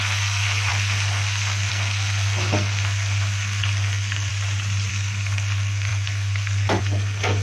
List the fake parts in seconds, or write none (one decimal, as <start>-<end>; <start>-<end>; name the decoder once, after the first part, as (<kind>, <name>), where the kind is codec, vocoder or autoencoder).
0.0-4.3 (codec, SNAC); 4.9-7.4